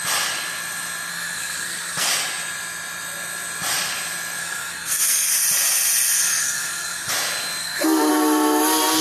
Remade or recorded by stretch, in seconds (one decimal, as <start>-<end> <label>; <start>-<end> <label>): 0.0-1.1 recorded; 1.1-2.1 remade; 2.1-4.4 recorded; 4.4-5.4 remade; 5.4-6.3 recorded; 6.3-7.1 remade; 7.1-7.6 recorded; 7.6-8.1 remade; 8.1-9.0 recorded